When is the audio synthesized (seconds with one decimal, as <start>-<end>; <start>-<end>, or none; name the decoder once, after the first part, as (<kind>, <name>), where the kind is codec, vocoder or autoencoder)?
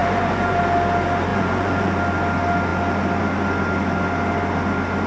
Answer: 0.0-0.6 (vocoder, Vocos); 1.3-1.9